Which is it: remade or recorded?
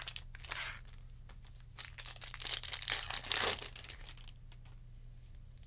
recorded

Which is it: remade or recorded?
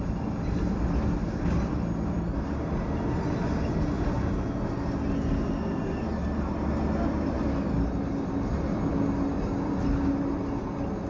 recorded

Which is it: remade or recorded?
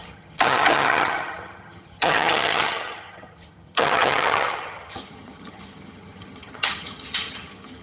remade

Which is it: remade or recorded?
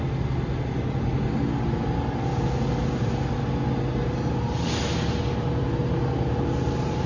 recorded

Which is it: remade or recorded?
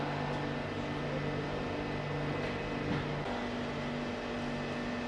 recorded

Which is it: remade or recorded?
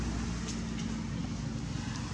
recorded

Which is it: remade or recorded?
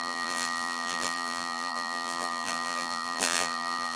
remade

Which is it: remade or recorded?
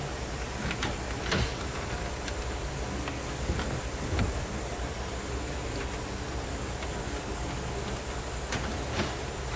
recorded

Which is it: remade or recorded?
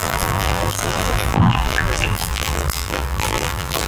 remade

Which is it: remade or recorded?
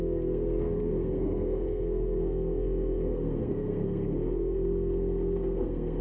remade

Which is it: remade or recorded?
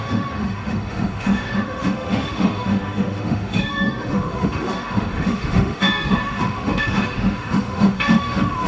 remade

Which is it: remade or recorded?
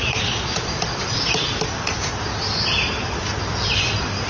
recorded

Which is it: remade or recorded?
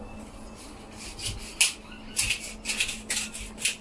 recorded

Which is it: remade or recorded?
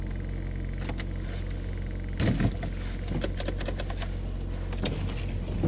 recorded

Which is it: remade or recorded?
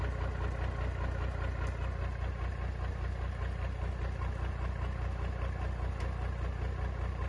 recorded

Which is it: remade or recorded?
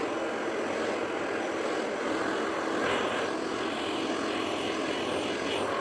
recorded